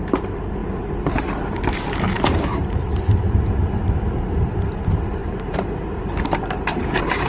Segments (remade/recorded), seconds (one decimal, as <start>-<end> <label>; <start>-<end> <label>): 0.0-0.6 remade; 0.6-1.7 recorded; 1.7-7.3 remade